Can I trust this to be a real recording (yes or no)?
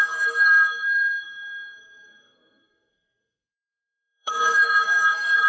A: no